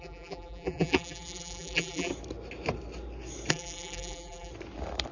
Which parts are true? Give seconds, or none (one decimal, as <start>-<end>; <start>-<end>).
2.1-3.5; 4.5-5.1